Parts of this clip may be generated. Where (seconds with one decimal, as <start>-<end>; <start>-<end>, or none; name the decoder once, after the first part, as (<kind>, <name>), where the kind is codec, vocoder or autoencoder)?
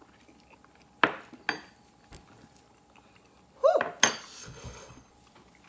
4.4-5.1 (codec, HILCodec)